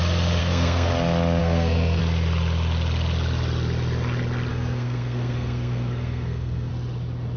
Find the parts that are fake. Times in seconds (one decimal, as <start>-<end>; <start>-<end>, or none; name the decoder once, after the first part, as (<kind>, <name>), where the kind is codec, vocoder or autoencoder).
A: 0.4-0.9 (codec, SNAC); 1.4-2.0; 4.5-6.7